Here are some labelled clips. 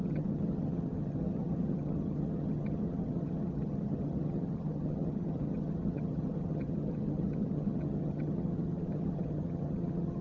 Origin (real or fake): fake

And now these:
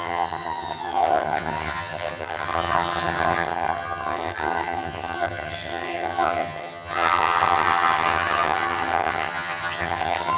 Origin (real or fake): fake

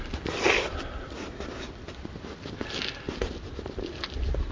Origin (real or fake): real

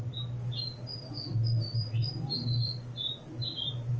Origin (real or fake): real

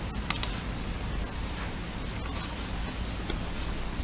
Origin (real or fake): real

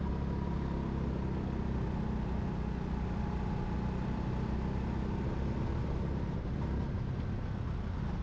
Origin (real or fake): real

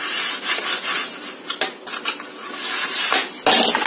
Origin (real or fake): real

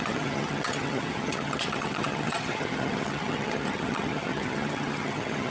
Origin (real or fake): fake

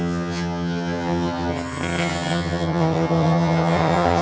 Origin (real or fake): fake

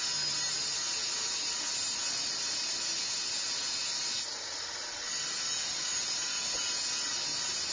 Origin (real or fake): real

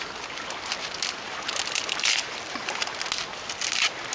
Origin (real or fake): real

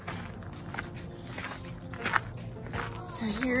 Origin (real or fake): real